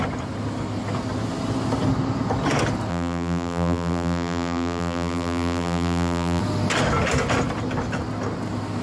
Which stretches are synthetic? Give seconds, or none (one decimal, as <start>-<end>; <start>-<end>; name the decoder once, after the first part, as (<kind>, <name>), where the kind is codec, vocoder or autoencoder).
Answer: 2.9-6.4 (vocoder, BigVGAN v2)